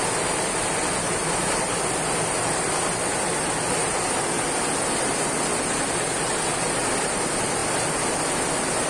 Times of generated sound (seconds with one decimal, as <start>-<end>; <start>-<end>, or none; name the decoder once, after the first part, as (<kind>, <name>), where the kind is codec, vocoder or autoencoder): none

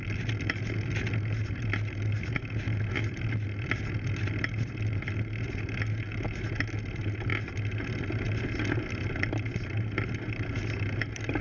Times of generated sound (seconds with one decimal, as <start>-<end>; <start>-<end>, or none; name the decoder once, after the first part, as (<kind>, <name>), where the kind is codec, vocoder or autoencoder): none